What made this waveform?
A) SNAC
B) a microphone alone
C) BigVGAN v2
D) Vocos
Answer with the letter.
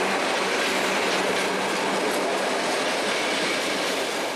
B